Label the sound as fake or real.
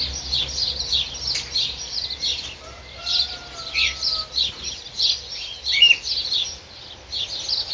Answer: real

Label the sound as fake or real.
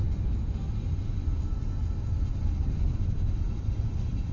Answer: real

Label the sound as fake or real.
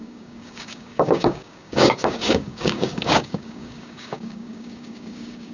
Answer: fake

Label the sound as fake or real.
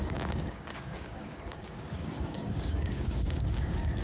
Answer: fake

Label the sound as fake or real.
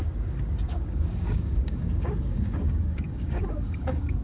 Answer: fake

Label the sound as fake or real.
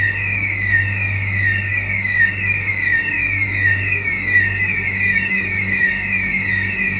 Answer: fake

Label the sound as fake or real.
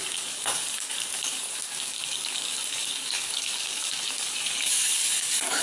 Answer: fake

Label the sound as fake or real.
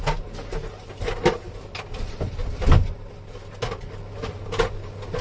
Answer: real